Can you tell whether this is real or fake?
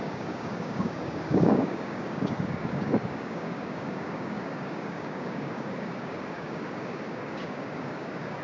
fake